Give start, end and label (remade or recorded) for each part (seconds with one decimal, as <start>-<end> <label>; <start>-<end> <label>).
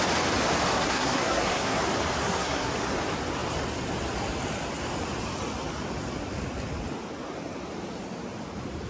0.0-0.7 recorded; 0.7-1.8 remade; 1.8-2.2 recorded; 2.2-2.7 remade; 2.7-8.9 recorded